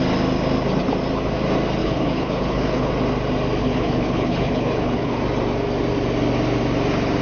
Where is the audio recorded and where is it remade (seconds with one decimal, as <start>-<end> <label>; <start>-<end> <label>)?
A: 0.0-1.8 recorded; 1.8-2.9 remade; 2.9-3.6 recorded; 3.6-5.2 remade; 5.2-7.2 recorded